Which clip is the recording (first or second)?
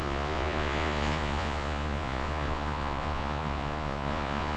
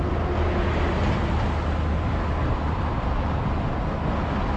second